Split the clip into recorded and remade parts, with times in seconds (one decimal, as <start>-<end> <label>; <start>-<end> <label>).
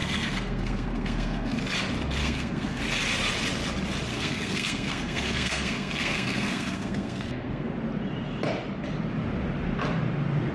0.0-1.6 remade; 1.6-2.2 recorded; 2.2-2.8 remade; 2.8-4.1 recorded; 4.1-7.7 remade; 7.7-10.5 recorded